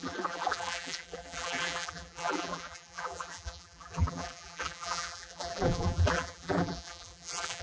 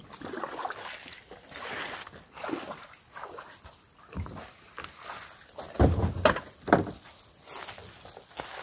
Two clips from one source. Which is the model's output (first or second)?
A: first